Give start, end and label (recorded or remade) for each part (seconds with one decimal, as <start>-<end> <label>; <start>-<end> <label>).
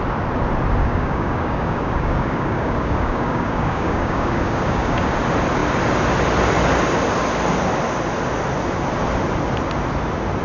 0.0-0.8 recorded; 0.8-5.1 remade; 5.1-10.4 recorded